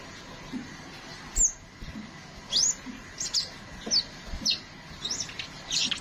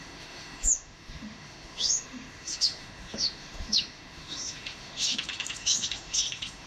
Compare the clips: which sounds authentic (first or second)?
first